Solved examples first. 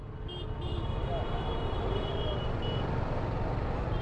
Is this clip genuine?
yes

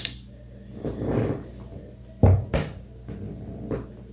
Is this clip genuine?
yes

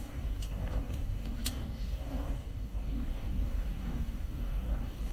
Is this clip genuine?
no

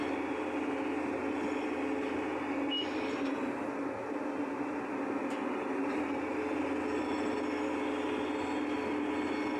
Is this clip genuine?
yes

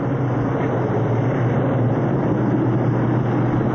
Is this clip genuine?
yes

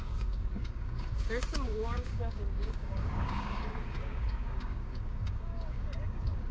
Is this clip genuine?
no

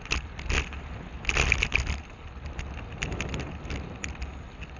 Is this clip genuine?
yes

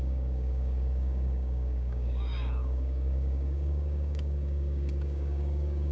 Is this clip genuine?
no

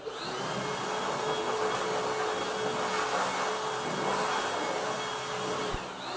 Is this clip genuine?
yes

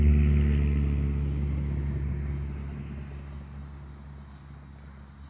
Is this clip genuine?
yes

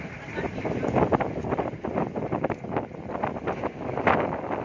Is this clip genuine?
yes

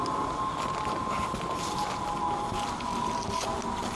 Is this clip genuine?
yes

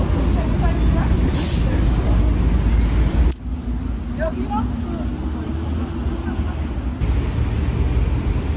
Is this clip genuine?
yes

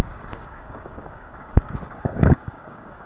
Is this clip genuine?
no